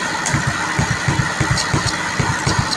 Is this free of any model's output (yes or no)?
yes